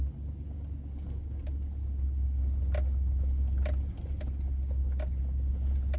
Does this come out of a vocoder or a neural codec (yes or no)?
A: no